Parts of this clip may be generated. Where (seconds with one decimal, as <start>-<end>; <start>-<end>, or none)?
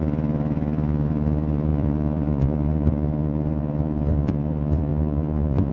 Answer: 0.0-5.7